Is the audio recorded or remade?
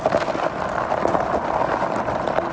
recorded